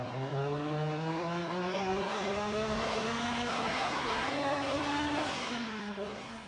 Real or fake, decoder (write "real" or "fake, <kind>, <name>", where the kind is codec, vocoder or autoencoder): fake, codec, SNAC